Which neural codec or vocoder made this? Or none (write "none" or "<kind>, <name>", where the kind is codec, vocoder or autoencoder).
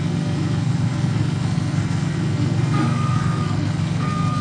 codec, SNAC